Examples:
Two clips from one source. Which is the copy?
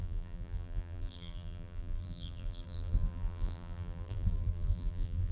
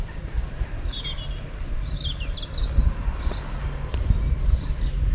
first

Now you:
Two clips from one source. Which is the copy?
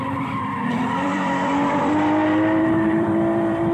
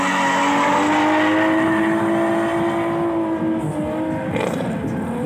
first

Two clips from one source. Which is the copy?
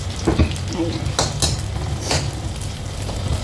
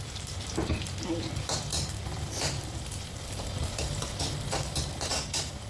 second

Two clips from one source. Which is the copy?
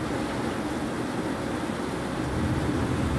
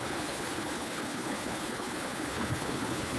second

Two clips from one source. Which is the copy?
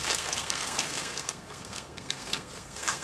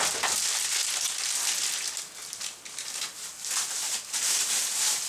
first